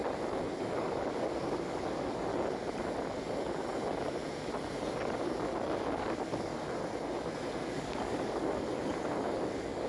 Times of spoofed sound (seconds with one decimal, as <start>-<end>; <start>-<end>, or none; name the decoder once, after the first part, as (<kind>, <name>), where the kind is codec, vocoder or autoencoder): 0.6-2.3 (codec, DAC); 5.9-6.8; 7.7-8.7; 9.4-9.9